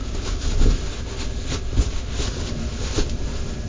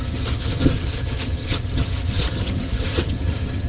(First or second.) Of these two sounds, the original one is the first